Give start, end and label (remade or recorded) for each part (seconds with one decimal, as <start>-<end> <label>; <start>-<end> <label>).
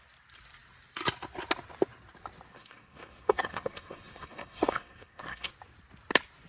0.0-2.5 recorded; 2.5-5.5 remade; 5.5-6.5 recorded